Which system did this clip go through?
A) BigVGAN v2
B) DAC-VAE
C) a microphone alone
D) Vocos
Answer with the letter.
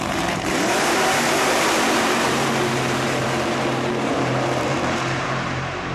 A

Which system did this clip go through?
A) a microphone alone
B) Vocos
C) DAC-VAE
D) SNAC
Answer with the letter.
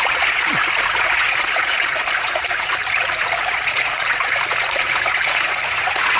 B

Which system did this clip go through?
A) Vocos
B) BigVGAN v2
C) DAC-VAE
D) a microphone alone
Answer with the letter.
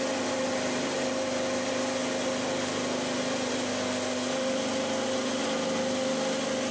D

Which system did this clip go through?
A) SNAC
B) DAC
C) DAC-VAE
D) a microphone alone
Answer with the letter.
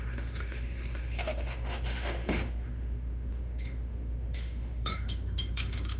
C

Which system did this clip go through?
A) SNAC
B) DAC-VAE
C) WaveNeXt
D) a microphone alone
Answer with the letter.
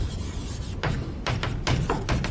D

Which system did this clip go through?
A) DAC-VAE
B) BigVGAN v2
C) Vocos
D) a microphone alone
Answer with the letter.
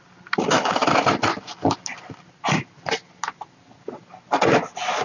D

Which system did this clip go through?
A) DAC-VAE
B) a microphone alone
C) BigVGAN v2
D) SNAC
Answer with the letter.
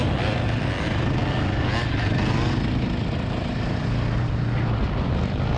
B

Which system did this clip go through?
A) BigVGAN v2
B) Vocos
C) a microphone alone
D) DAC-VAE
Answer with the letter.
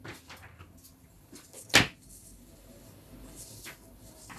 C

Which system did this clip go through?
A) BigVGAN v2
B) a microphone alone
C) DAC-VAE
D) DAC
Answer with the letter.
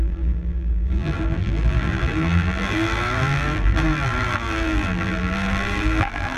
A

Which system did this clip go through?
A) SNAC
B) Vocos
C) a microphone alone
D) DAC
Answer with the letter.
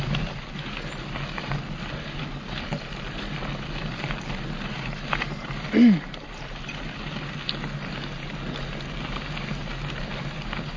C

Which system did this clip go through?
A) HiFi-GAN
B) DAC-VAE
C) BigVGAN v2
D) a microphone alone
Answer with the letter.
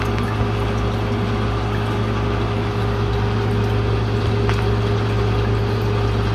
D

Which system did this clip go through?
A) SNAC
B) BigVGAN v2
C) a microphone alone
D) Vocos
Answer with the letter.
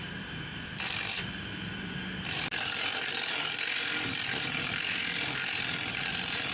C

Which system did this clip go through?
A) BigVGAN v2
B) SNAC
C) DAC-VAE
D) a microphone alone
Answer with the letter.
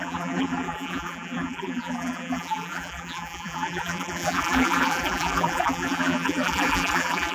A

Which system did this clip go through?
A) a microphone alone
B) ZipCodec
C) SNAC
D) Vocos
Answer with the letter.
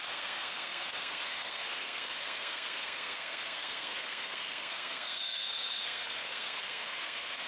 C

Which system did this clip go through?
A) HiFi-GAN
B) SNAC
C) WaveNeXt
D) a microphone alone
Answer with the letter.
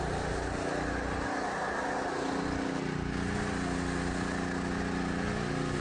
D